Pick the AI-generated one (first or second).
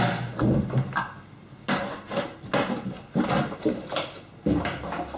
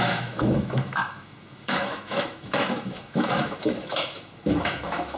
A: second